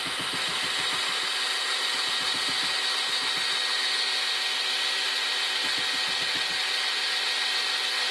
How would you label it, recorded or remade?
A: recorded